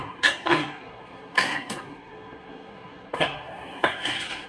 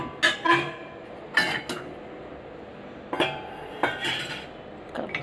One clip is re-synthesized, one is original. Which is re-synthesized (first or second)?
first